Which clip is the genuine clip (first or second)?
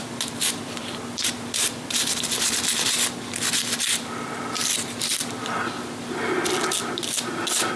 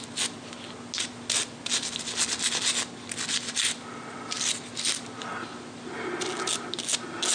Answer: second